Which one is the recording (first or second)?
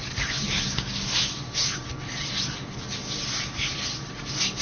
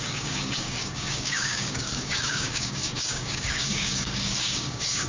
first